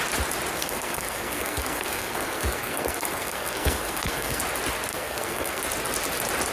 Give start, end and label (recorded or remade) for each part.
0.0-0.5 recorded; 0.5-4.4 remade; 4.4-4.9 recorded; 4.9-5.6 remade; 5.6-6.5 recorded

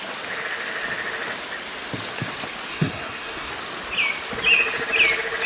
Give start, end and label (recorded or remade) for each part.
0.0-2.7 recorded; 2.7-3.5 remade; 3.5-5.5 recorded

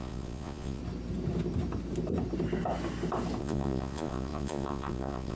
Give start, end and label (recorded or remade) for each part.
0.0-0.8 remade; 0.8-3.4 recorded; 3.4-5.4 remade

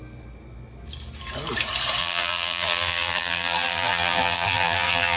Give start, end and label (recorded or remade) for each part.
0.0-2.0 recorded; 2.0-5.2 remade

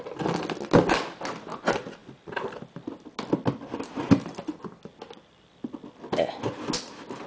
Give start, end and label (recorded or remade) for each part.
0.0-7.3 recorded

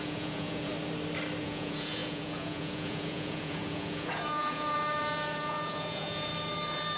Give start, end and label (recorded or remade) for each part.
0.0-0.7 remade; 0.7-1.4 recorded; 1.4-6.3 remade; 6.3-7.0 recorded

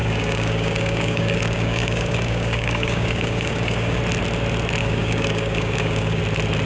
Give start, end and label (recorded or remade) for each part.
0.0-4.0 remade; 4.0-4.8 recorded; 4.8-6.2 remade; 6.2-6.7 recorded